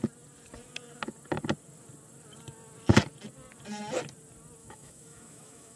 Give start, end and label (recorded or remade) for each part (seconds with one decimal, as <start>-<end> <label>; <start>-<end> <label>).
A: 0.0-4.6 recorded; 4.6-5.8 remade